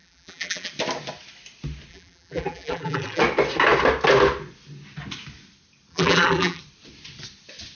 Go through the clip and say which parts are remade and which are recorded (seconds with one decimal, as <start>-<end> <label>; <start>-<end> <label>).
0.0-0.7 remade; 0.7-1.9 recorded; 1.9-3.2 remade; 3.2-5.9 recorded; 5.9-6.6 remade; 6.6-7.7 recorded